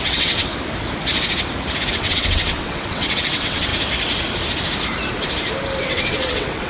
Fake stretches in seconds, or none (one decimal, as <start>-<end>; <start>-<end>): 0.0-0.5; 1.9-3.7; 5.8-6.7